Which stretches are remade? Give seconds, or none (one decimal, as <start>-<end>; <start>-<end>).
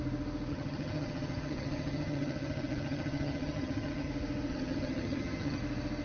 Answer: 0.5-4.1; 4.5-5.6